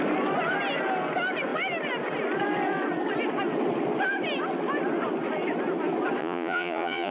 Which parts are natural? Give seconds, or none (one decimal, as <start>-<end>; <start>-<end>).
0.0-6.2